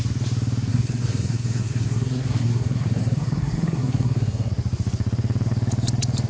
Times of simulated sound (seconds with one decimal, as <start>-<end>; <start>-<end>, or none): 0.7-4.5